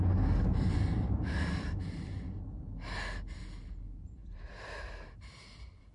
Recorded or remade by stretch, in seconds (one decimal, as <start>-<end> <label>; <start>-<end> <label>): 0.0-0.5 recorded; 0.5-2.3 remade; 2.3-4.2 recorded; 4.2-5.9 remade